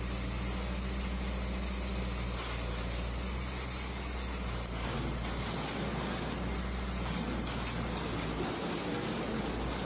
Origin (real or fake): real